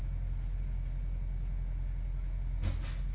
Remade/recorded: recorded